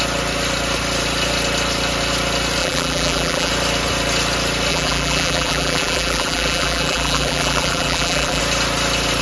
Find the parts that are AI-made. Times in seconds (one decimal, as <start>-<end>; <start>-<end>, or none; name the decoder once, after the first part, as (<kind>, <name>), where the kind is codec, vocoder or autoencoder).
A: 2.6-3.5 (vocoder, BigVGAN v2); 4.7-8.4